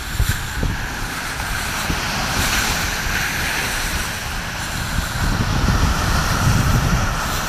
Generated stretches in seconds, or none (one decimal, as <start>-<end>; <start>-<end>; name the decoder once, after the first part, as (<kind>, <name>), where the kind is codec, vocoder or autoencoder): 6.5-7.5 (vocoder, BigVGAN v2)